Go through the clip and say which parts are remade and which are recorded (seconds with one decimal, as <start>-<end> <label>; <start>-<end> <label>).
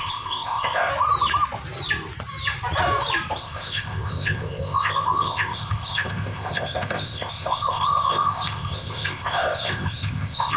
0.0-0.9 remade; 0.9-3.4 recorded; 3.4-10.6 remade